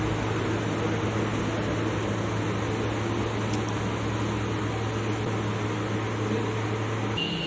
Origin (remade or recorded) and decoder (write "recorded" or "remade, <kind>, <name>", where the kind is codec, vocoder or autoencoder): recorded